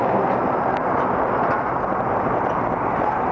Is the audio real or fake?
real